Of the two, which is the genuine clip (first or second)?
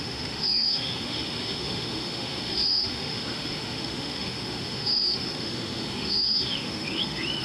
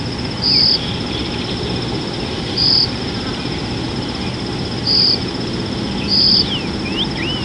second